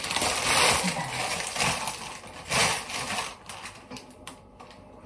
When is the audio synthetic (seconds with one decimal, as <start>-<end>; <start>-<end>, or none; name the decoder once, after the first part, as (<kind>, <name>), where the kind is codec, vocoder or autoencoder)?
none